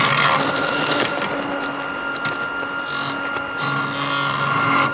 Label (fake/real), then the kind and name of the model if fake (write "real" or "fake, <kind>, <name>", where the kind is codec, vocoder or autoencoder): real